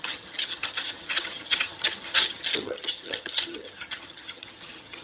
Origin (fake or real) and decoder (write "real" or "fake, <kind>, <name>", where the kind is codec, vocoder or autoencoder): fake, vocoder, HiFi-GAN